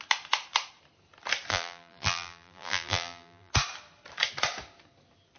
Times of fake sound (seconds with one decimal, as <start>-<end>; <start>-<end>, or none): 1.5-3.5